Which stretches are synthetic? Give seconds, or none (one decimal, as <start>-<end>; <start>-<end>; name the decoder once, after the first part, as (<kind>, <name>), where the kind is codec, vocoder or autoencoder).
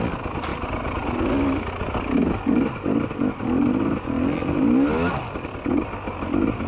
none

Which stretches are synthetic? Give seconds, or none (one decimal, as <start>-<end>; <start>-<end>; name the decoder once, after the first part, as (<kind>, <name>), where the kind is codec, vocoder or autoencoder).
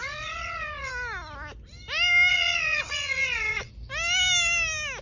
0.0-0.9 (vocoder, WaveNeXt); 2.3-3.7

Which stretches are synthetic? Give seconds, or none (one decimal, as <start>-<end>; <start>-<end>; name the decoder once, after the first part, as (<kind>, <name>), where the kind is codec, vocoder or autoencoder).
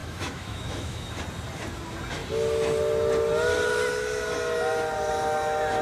0.0-1.2 (autoencoder, DAC-VAE)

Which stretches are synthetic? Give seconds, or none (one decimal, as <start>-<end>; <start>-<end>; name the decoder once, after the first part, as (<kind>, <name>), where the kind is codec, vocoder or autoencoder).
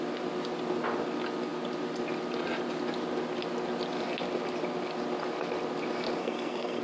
6.2-6.8 (codec, SNAC)